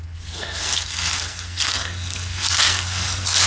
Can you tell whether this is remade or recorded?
remade